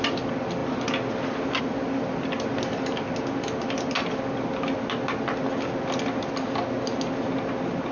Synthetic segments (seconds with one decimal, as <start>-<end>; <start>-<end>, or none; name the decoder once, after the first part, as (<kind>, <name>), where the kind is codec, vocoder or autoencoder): none